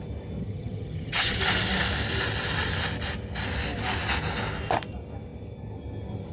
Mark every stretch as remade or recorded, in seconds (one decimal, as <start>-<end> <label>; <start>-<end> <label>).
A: 0.0-0.4 recorded; 0.4-1.4 remade; 1.4-6.3 recorded

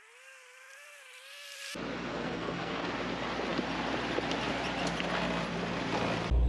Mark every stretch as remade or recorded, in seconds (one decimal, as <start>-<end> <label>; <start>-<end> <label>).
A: 0.0-2.1 recorded; 2.1-2.9 remade; 2.9-6.5 recorded

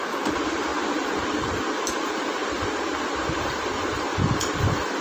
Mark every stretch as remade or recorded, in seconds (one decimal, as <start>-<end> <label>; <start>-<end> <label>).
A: 0.0-0.7 remade; 0.7-1.9 recorded; 1.9-2.4 remade; 2.4-2.9 recorded; 2.9-4.1 remade; 4.1-5.0 recorded

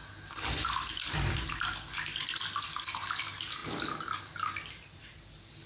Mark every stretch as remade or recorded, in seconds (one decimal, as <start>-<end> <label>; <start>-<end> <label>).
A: 0.0-5.7 recorded